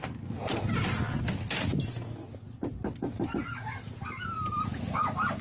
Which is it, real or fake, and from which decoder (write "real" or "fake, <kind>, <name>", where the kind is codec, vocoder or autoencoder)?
real